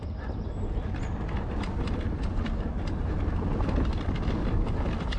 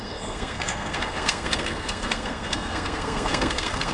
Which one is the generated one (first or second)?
second